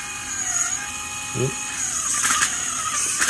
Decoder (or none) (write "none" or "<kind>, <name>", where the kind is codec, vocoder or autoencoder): none